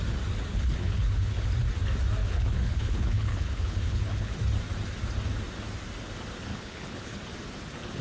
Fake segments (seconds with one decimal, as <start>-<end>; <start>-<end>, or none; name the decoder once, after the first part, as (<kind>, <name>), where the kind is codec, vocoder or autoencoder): 0.5-1.5 (codec, HILCodec); 2.2-4.4; 6.5-7.2